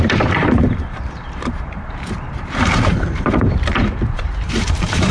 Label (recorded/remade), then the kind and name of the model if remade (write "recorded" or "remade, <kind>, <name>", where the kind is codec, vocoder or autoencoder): remade, vocoder, BigVGAN v2